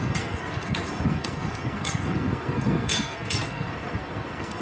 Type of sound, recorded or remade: remade